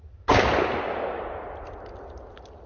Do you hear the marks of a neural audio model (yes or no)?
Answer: no